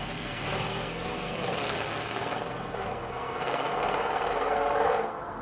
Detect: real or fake fake